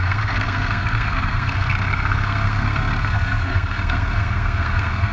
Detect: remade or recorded remade